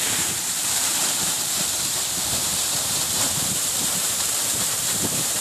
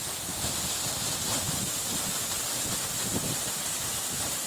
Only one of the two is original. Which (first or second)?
second